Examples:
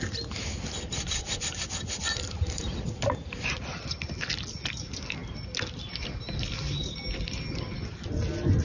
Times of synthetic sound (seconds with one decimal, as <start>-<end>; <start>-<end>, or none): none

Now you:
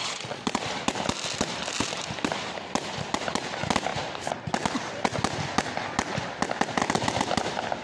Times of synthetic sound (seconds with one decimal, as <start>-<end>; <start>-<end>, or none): 0.0-0.6

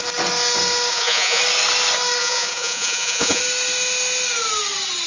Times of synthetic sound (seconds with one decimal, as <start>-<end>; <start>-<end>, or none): 0.9-1.4; 2.2-3.4

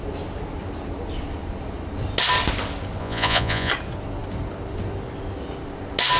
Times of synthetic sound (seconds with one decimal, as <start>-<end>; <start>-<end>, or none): 3.0-3.7

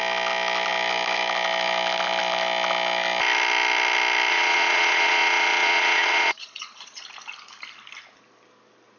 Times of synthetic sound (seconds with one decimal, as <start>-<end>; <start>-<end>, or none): 4.3-7.0

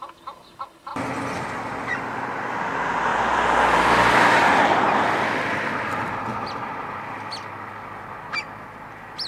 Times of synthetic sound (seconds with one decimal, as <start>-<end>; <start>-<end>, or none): none

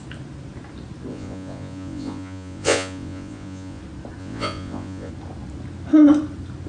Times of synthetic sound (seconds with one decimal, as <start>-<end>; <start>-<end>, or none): 1.1-3.8; 4.2-5.1